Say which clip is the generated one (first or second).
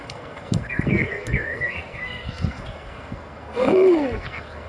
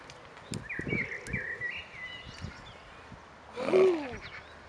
first